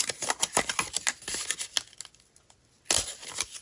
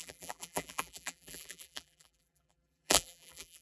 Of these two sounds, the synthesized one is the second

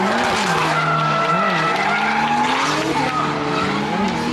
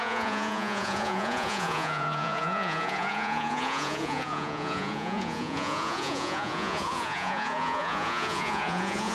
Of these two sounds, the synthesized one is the second